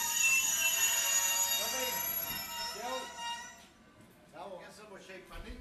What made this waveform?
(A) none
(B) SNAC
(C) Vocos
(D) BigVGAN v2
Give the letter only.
A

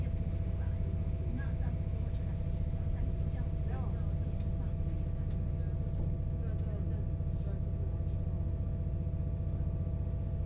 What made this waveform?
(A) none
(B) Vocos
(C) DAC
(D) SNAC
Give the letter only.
A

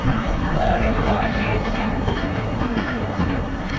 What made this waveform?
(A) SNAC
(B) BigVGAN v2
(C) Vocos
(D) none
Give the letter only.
A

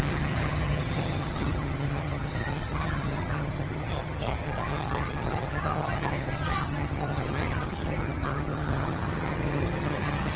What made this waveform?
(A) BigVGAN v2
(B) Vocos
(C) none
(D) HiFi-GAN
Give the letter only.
D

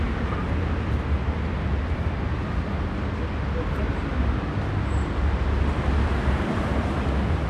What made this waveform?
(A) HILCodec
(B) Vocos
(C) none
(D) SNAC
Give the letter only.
C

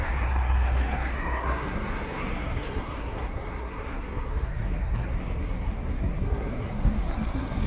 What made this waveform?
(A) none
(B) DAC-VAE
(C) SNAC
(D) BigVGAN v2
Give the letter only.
C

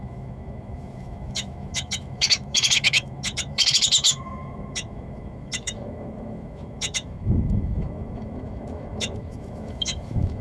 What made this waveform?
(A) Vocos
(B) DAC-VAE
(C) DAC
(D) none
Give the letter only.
B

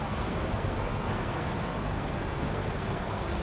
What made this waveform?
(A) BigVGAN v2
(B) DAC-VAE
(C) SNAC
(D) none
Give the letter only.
C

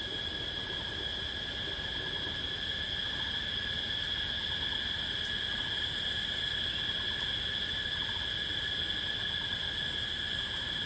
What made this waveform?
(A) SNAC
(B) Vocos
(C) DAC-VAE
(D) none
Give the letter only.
D